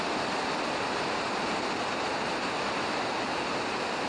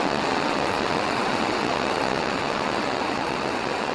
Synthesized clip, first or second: second